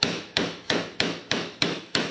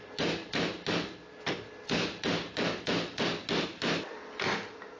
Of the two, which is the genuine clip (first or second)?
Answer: second